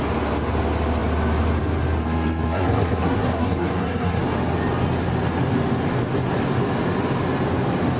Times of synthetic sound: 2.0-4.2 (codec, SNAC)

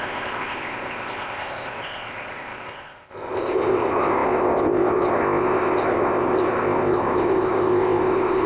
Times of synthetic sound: 0.0-8.5 (codec, ZipCodec)

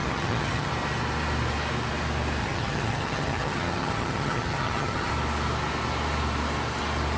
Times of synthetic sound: 0.0-0.7 (vocoder, HiFi-GAN); 2.4-5.1

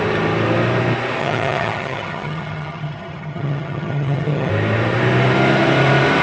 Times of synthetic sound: 1.2-4.5 (vocoder, HiFi-GAN)

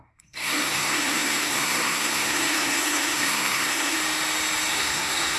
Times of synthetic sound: 0.0-4.0 (codec, SNAC); 4.7-5.4